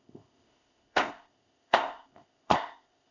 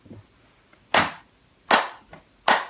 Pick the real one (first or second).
second